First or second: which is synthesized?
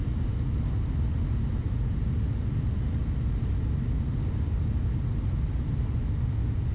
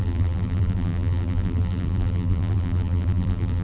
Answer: second